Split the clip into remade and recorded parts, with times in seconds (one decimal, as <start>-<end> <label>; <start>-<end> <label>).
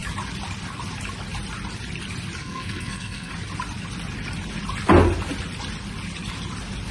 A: 0.0-2.4 recorded; 2.4-3.3 remade; 3.3-6.9 recorded